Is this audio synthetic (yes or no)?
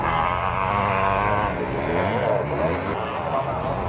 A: no